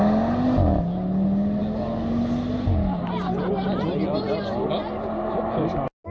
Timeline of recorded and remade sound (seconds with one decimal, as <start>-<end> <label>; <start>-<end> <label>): 0.0-6.1 recorded